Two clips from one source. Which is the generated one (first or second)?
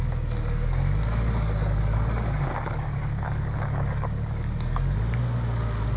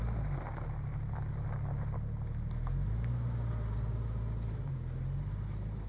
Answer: first